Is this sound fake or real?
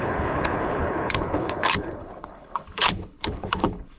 fake